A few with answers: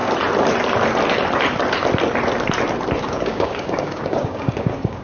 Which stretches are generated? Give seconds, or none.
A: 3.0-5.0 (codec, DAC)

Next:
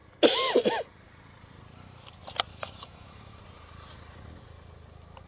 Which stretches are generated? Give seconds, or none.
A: 2.5-3.4 (autoencoder, DAC-VAE)

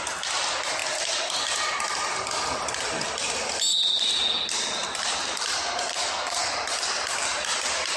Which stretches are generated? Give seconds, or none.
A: 5.9-6.5 (codec, SNAC)

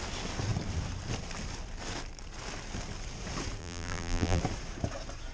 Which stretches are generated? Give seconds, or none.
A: 3.6-4.4 (vocoder, BigVGAN v2)

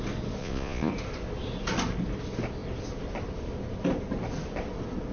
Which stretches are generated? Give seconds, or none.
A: 0.4-0.9 (vocoder, Vocos)

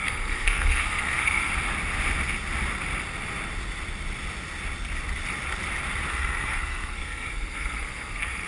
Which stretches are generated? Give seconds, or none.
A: 0.0-1.5 (codec, SNAC); 6.1-8.5